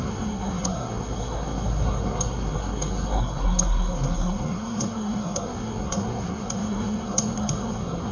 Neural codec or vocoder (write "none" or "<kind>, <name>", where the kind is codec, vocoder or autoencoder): codec, SNAC